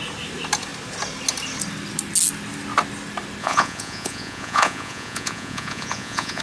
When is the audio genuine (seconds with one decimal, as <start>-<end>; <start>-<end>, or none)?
0.0-3.4